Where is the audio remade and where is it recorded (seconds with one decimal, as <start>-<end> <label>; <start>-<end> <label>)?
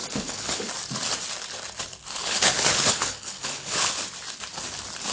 0.0-0.7 remade; 0.7-2.2 recorded; 2.2-3.9 remade; 3.9-5.1 recorded